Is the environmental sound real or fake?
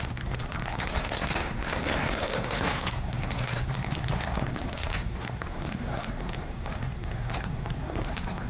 fake